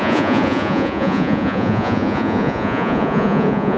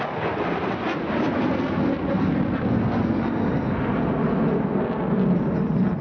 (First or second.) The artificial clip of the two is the first